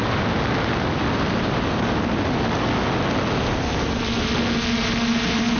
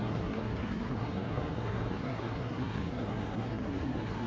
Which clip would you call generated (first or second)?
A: second